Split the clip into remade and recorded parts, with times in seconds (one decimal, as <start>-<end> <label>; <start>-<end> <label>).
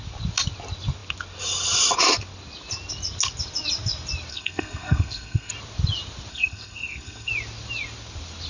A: 0.0-4.3 recorded; 4.3-5.5 remade; 5.5-6.3 recorded; 6.3-7.3 remade; 7.3-8.5 recorded